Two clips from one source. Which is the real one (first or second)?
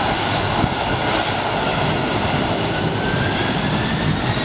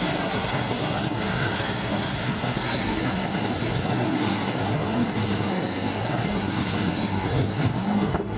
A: first